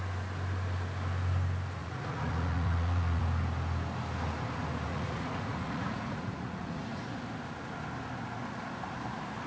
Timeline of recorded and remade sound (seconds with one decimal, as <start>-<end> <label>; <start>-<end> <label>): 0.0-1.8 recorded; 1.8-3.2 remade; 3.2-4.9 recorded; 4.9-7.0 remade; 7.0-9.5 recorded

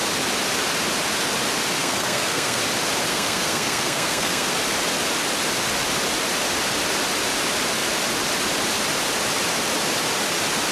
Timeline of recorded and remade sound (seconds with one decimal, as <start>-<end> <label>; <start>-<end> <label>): 0.0-1.8 recorded; 1.8-2.6 remade; 2.6-3.1 recorded; 3.1-4.5 remade; 4.5-10.7 recorded

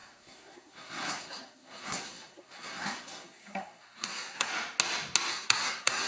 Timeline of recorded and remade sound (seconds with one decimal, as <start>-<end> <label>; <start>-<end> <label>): 0.0-4.5 remade; 4.5-5.3 recorded; 5.3-6.1 remade

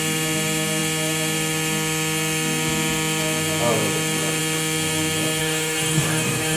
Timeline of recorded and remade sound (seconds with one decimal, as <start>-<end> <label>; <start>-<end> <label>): 0.0-5.4 recorded; 5.4-6.6 remade

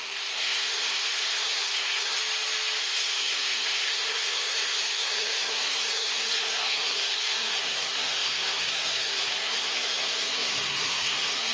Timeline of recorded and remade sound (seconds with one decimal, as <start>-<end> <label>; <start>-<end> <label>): 0.0-2.2 remade; 2.2-2.8 recorded; 2.8-11.5 remade